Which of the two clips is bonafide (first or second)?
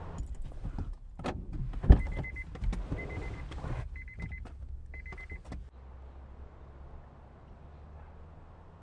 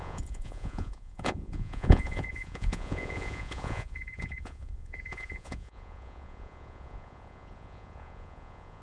first